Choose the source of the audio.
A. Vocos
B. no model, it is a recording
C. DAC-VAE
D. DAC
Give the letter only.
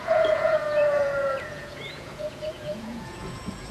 A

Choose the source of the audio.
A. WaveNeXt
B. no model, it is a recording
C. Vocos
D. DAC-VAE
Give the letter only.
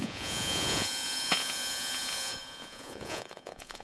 C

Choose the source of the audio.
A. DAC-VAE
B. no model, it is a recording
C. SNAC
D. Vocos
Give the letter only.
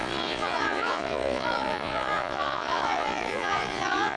D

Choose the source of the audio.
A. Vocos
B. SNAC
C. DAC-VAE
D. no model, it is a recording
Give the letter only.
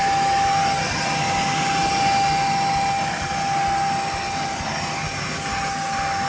D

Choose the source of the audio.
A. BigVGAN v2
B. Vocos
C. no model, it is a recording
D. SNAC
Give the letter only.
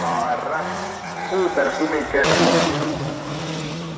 B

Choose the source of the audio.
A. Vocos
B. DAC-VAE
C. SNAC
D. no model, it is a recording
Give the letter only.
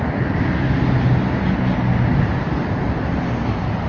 D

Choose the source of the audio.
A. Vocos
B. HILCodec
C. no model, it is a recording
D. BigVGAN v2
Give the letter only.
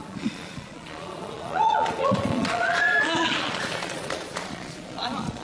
A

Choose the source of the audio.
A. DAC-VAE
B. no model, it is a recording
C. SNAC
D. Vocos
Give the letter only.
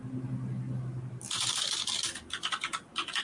B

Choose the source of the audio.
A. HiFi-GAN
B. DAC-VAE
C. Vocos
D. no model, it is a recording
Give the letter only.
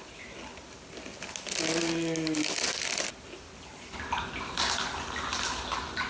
D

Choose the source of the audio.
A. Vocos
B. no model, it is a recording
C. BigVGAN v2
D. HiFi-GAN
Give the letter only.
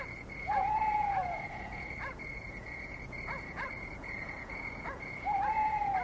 A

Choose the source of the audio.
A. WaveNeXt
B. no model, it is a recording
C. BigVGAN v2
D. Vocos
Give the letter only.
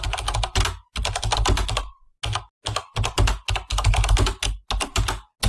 B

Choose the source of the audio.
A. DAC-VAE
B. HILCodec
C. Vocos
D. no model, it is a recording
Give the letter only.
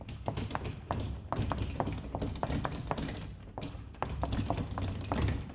D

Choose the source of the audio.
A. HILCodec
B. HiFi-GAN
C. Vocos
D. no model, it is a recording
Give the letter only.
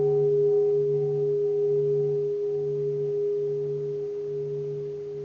D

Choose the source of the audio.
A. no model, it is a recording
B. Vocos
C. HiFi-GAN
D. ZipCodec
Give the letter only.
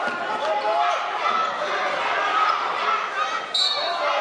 A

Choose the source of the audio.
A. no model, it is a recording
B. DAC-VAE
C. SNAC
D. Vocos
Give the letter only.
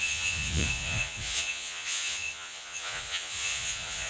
D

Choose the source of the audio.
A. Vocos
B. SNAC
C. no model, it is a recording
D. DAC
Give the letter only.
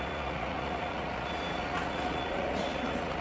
A